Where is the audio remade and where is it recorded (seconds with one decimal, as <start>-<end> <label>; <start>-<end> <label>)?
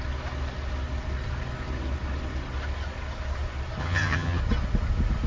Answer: 0.0-3.8 recorded; 3.8-4.4 remade; 4.4-5.3 recorded